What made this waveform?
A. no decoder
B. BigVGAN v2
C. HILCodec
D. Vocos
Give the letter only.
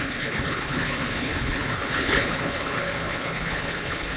C